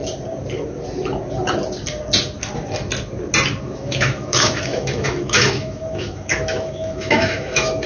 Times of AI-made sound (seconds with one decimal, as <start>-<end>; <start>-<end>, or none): 3.6-7.9